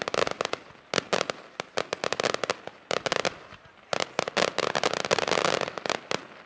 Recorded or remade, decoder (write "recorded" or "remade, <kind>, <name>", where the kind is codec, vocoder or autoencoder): recorded